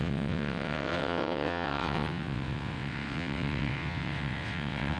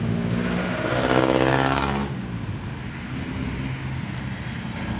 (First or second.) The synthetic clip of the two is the first